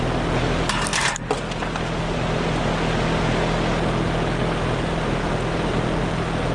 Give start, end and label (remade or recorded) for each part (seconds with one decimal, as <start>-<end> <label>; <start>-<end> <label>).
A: 0.0-6.5 recorded